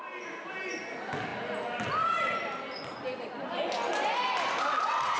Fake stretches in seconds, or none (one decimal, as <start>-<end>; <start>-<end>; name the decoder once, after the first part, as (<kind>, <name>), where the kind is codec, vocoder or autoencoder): none